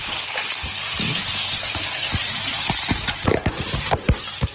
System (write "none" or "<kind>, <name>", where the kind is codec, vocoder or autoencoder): none